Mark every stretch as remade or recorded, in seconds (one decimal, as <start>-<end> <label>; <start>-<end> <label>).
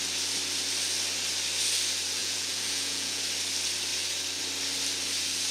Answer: 0.0-2.2 recorded; 2.2-3.2 remade; 3.2-5.5 recorded